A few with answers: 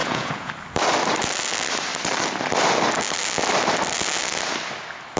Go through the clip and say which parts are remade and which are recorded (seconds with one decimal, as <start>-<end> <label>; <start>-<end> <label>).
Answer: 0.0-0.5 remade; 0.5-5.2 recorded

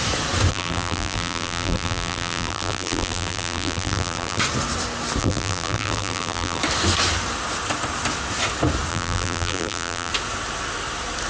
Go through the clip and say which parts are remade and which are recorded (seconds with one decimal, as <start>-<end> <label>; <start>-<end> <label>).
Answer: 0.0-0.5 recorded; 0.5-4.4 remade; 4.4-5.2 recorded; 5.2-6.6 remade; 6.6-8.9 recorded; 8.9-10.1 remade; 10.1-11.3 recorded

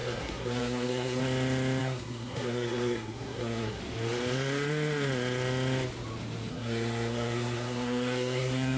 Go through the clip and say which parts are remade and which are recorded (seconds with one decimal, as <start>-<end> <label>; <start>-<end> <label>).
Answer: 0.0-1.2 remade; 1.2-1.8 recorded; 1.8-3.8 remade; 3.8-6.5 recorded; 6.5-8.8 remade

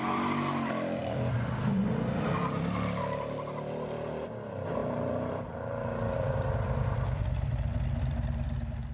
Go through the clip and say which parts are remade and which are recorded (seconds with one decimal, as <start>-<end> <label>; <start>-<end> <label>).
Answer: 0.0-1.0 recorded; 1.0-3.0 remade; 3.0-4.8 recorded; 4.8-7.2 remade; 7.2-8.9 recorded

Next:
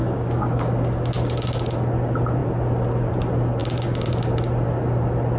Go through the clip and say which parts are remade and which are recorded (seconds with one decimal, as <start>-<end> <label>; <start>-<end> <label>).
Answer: 0.0-1.0 remade; 1.0-5.4 recorded

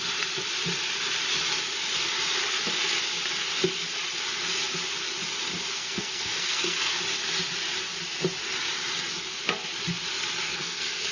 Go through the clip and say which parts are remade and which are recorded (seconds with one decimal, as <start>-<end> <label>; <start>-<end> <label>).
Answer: 0.0-5.7 recorded; 5.7-7.0 remade; 7.0-10.5 recorded; 10.5-11.1 remade